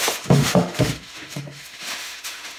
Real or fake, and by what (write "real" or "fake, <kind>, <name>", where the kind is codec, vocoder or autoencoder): fake, autoencoder, DAC-VAE